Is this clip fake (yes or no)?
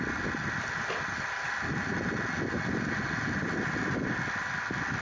no